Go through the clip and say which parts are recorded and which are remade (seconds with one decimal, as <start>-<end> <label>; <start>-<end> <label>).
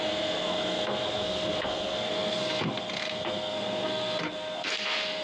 0.0-5.2 remade